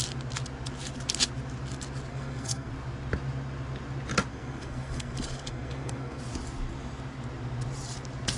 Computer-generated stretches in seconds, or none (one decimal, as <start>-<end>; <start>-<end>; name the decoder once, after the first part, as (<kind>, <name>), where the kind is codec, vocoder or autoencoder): 2.1-2.7 (codec, SNAC); 4.3-6.2